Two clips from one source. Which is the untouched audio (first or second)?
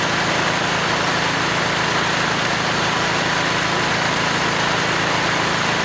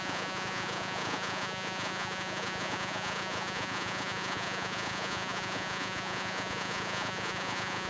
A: first